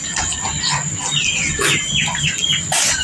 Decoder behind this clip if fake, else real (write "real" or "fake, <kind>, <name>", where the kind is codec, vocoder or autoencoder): real